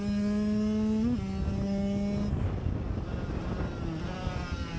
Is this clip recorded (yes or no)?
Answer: yes